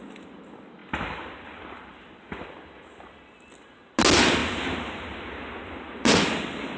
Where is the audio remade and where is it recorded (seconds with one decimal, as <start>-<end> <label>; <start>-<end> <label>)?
0.0-6.8 recorded